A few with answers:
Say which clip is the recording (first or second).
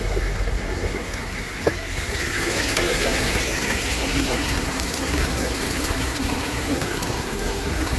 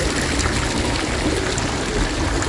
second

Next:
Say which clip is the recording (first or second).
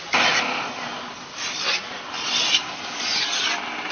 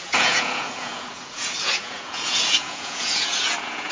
first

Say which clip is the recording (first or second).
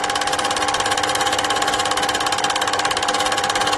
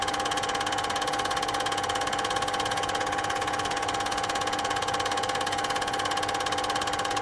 first